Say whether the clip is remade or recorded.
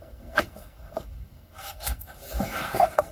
remade